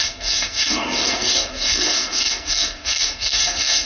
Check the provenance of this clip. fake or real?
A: fake